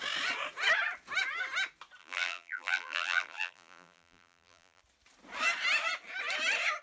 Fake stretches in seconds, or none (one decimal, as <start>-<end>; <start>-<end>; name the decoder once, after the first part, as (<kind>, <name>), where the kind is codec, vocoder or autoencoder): 2.0-4.8 (vocoder, BigVGAN v2)